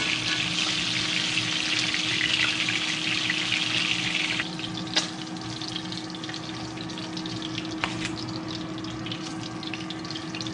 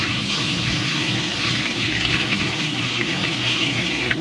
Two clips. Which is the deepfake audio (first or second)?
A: second